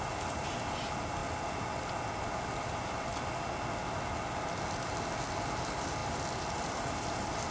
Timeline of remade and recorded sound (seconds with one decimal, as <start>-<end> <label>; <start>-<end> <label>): 0.0-1.2 remade; 1.2-2.2 recorded; 2.2-3.1 remade; 3.1-5.2 recorded; 5.2-7.5 remade

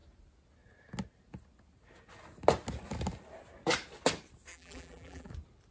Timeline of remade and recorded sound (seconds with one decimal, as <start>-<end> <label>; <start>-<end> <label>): 0.0-4.5 recorded; 4.5-5.3 remade; 5.3-5.7 recorded

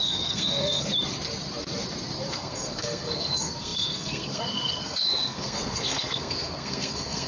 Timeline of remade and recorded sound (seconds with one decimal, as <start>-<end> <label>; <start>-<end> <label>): 0.0-0.9 remade; 0.9-2.3 recorded; 2.3-7.3 remade

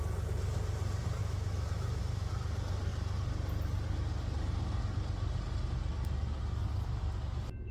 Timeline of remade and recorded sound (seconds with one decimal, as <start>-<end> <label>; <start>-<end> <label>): 0.0-1.2 recorded; 1.2-2.3 remade; 2.3-7.7 recorded

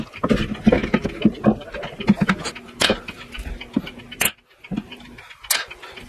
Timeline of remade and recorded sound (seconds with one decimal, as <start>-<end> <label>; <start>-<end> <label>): 0.0-6.1 recorded